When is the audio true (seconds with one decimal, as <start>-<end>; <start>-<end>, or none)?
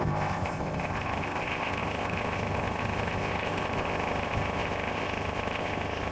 none